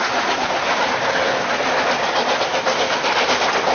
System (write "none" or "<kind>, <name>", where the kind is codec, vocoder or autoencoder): none